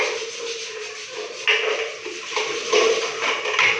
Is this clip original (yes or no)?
yes